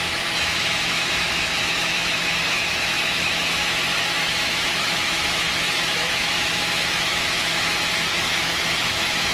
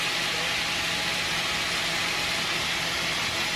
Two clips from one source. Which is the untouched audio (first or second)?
second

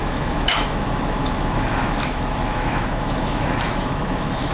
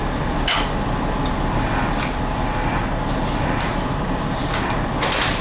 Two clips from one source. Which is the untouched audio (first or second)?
second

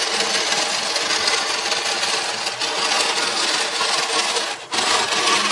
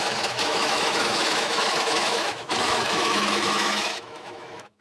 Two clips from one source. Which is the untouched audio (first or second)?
first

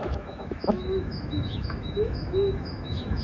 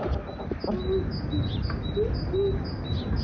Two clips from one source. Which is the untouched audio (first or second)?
second